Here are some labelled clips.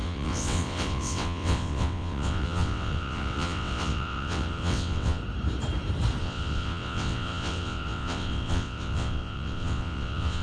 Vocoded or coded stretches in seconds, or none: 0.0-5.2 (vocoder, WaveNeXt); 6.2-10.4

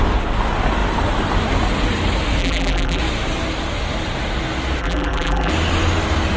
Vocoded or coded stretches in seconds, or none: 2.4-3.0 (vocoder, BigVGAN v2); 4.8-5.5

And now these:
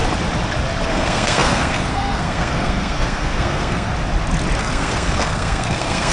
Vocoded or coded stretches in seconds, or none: 0.9-3.9 (codec, SNAC); 4.6-6.1

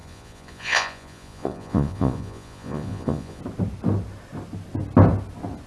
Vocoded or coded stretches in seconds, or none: 0.0-3.4 (vocoder, Vocos)